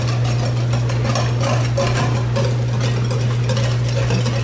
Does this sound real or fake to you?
real